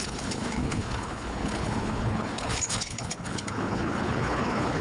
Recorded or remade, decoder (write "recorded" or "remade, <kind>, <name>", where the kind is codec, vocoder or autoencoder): remade, codec, HILCodec